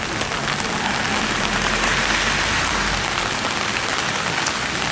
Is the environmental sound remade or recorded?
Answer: recorded